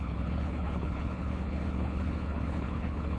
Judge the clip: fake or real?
fake